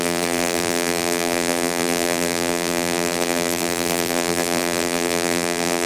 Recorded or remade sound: remade